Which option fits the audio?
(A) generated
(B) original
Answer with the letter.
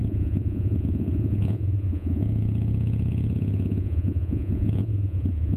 A